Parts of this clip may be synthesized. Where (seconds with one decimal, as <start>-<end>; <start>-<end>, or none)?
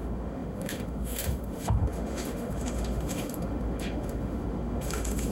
0.0-5.3